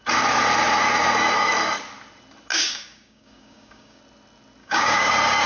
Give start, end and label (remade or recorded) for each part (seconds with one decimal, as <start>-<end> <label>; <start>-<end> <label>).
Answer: 0.0-2.5 recorded; 2.5-4.0 remade; 4.0-4.6 recorded; 4.6-5.1 remade; 5.1-5.5 recorded